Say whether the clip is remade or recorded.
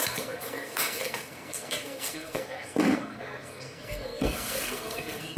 remade